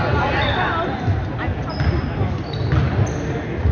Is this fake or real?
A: real